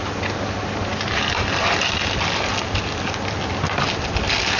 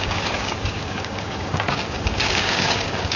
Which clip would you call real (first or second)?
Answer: first